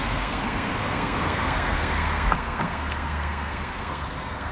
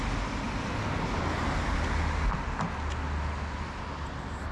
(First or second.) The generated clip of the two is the first